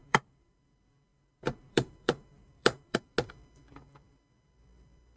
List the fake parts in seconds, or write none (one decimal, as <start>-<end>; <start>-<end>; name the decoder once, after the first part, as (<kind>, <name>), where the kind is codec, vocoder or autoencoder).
0.0-0.6 (vocoder, BigVGAN v2); 1.1-3.0